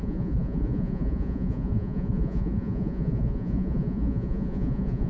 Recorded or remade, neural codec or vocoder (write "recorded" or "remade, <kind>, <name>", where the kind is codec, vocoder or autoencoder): remade, vocoder, Vocos